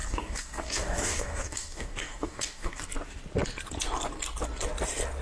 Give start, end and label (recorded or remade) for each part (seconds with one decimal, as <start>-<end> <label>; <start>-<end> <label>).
0.0-2.8 remade; 2.8-5.2 recorded